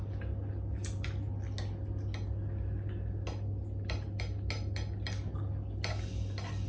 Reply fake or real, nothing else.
real